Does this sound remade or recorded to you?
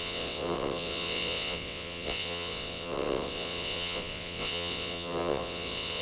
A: remade